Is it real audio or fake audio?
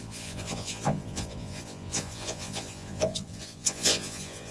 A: fake